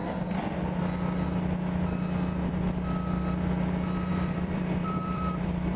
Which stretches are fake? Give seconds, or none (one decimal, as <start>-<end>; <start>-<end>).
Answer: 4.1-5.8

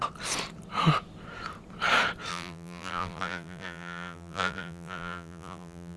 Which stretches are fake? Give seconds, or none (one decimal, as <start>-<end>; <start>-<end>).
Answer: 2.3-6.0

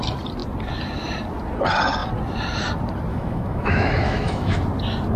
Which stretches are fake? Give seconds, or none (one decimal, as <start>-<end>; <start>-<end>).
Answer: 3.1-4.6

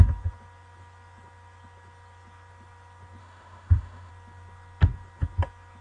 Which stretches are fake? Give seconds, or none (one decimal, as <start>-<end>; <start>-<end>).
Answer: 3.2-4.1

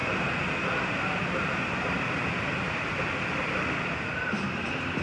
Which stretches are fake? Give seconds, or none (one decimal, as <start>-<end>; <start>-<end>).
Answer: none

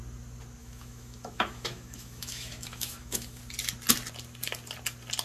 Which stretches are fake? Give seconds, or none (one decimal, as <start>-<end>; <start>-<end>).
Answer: 0.6-3.4

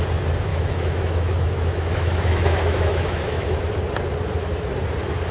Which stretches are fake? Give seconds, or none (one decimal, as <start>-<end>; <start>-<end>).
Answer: 0.5-3.7